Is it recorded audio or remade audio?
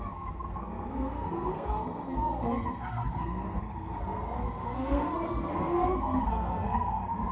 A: remade